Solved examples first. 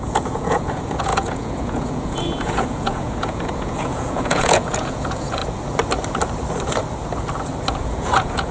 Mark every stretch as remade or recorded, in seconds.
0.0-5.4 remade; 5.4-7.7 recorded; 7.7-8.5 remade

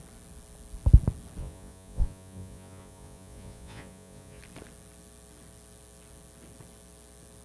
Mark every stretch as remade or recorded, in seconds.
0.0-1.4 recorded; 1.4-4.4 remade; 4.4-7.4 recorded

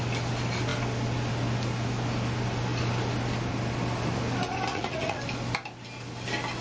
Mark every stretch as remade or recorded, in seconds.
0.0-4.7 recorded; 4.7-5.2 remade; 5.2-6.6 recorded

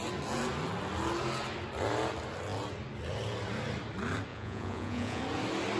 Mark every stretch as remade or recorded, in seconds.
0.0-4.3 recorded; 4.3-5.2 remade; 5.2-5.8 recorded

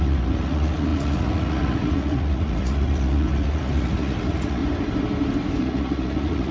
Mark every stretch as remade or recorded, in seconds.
0.0-4.6 remade; 4.6-5.6 recorded; 5.6-6.5 remade